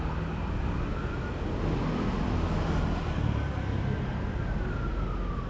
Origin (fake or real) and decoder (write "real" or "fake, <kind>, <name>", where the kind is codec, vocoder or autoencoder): real